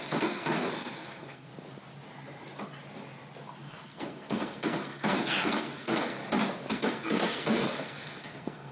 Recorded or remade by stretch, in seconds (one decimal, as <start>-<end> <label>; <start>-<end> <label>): 0.0-1.5 remade; 1.5-3.7 recorded; 3.7-6.2 remade; 6.2-6.7 recorded; 6.7-8.7 remade